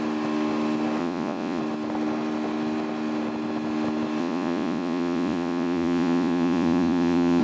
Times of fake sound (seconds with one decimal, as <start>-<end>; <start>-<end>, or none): 1.0-1.6; 4.2-7.4